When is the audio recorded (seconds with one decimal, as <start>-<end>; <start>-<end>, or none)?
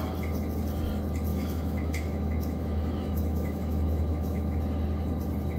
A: 0.0-1.3; 4.6-5.6